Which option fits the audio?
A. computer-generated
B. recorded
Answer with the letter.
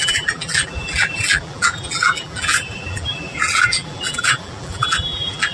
A